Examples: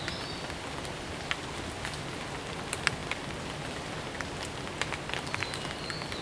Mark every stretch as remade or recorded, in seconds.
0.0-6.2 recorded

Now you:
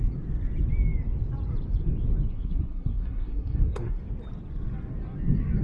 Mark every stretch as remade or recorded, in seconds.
0.0-2.3 recorded; 2.3-4.0 remade; 4.0-5.6 recorded

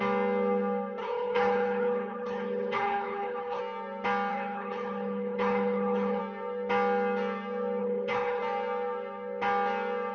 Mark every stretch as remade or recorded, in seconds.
0.0-1.0 recorded; 1.0-3.6 remade; 3.6-4.3 recorded; 4.3-6.2 remade; 6.2-7.8 recorded; 7.8-8.4 remade; 8.4-10.1 recorded

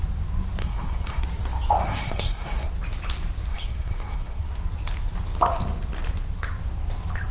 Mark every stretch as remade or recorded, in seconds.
0.0-0.6 recorded; 0.6-1.2 remade; 1.2-1.8 recorded; 1.8-2.7 remade; 2.7-3.5 recorded; 3.5-4.4 remade; 4.4-7.3 recorded

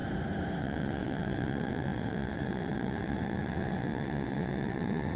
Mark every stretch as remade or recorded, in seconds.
0.0-0.6 recorded; 0.6-5.2 remade

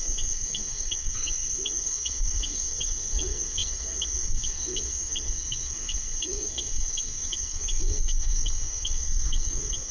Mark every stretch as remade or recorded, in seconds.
0.0-9.9 remade

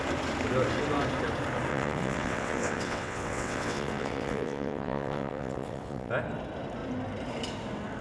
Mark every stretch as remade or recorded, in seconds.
0.0-1.7 recorded; 1.7-6.1 remade; 6.1-8.0 recorded

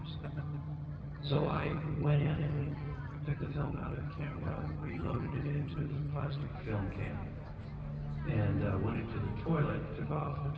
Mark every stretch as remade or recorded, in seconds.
0.0-6.5 remade; 6.5-10.1 recorded; 10.1-10.6 remade